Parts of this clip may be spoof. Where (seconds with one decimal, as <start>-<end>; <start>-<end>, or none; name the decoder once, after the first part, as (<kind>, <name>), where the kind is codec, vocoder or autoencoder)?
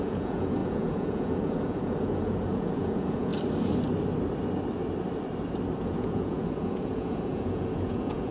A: 0.0-3.3 (vocoder, Vocos); 5.8-8.3